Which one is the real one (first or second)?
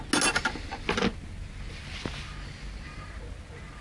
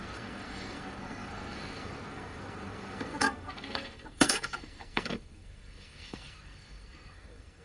first